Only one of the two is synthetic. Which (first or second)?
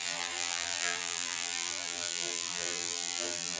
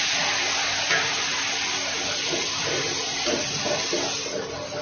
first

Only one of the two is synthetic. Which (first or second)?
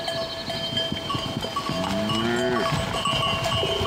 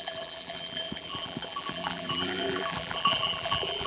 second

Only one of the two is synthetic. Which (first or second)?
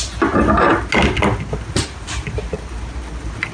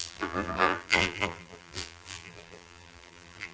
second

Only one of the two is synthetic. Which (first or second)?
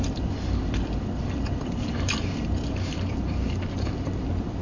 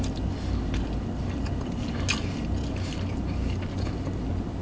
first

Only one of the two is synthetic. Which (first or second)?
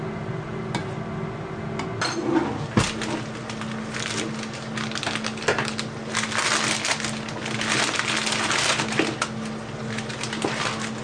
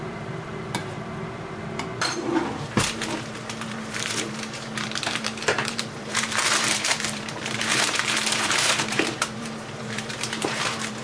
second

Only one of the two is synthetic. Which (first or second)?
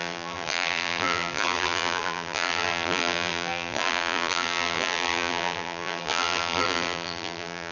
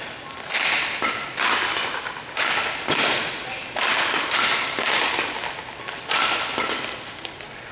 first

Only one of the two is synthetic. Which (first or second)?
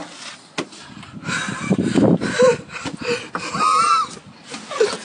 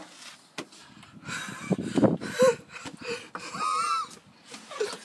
first